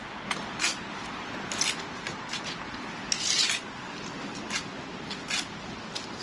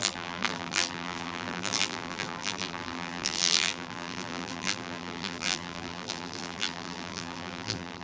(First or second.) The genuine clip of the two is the first